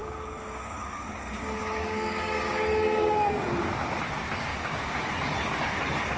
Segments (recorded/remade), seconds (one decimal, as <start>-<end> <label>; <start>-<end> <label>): 0.0-3.7 remade; 3.7-4.5 recorded; 4.5-5.1 remade; 5.1-6.2 recorded